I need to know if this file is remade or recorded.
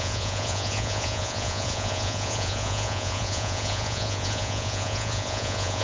remade